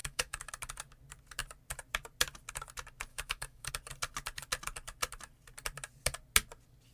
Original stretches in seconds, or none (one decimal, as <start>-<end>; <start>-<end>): 0.5-3.1; 3.7-6.9